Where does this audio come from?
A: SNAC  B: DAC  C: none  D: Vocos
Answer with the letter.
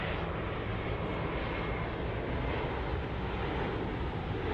C